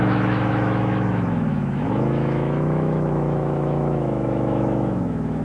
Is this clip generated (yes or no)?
yes